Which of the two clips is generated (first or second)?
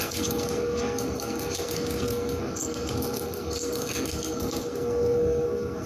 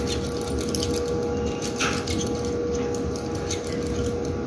first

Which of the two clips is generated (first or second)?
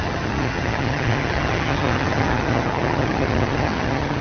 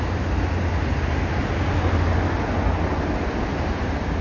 first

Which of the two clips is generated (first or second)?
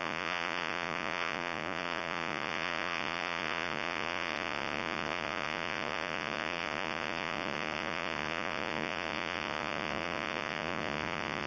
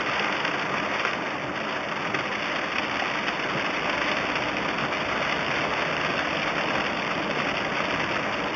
first